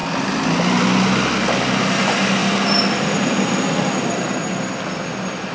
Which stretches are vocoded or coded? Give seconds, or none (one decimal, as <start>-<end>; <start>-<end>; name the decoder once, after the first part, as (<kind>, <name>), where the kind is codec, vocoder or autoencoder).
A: none